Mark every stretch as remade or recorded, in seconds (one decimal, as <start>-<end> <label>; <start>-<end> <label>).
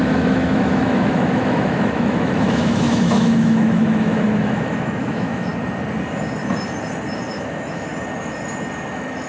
0.0-5.5 remade; 5.5-7.3 recorded; 7.3-7.9 remade; 7.9-8.9 recorded; 8.9-9.3 remade